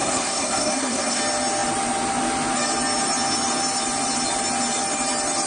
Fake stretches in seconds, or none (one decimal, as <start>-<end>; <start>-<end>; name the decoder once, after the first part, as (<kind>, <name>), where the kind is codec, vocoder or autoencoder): 0.0-1.2 (codec, SNAC)